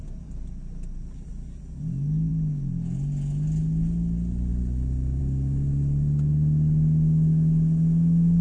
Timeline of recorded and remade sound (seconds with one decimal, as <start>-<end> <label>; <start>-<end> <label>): 0.0-8.4 recorded